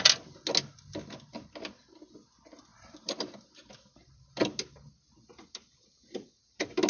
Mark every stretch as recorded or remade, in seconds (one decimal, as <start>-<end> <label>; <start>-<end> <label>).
0.0-2.7 recorded; 2.7-3.7 remade; 3.7-6.9 recorded